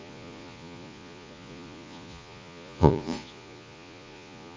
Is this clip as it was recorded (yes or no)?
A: no